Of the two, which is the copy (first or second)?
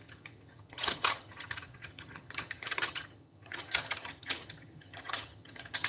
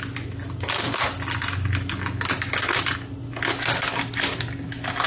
first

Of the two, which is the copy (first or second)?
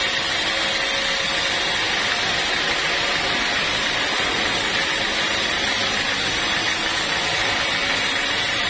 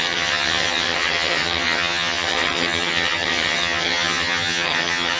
second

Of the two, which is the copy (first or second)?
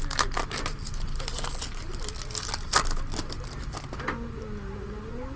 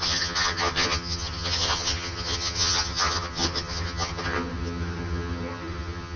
second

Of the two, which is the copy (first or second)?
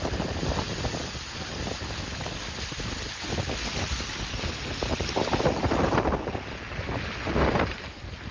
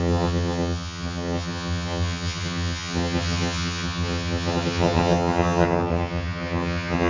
second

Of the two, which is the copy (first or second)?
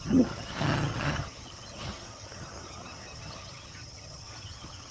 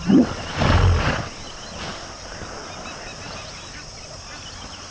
first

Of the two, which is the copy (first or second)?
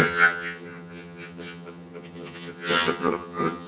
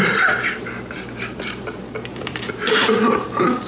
first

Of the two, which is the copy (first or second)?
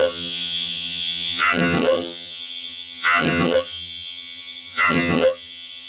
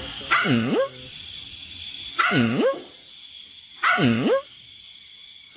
first